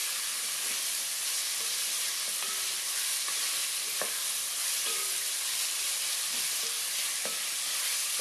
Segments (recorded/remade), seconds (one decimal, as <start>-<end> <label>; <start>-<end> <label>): 0.0-0.8 remade; 0.8-3.6 recorded; 3.6-6.6 remade; 6.6-8.2 recorded